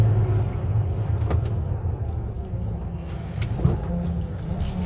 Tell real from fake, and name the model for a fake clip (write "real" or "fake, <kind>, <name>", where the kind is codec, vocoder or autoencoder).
real